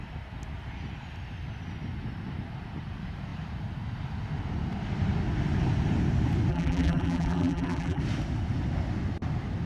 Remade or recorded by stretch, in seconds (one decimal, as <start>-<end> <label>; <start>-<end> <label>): 0.0-6.5 recorded; 6.5-8.0 remade; 8.0-9.7 recorded